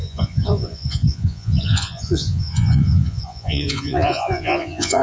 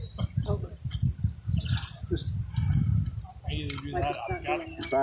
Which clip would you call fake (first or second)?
first